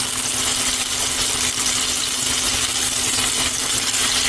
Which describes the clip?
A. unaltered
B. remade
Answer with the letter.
A